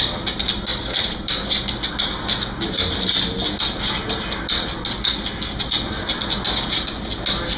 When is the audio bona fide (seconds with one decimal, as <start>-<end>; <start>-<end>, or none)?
0.0-0.7; 1.5-7.6